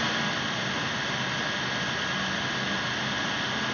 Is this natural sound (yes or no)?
yes